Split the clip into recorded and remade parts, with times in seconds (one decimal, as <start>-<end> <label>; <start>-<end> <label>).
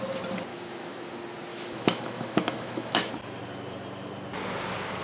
0.0-0.5 recorded; 0.5-1.1 remade; 1.1-1.5 recorded; 1.5-3.1 remade; 3.1-5.0 recorded